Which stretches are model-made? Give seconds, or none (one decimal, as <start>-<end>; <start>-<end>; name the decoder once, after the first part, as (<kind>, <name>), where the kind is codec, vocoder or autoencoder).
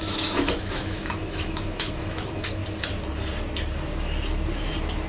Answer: 0.0-2.6 (autoencoder, DAC-VAE)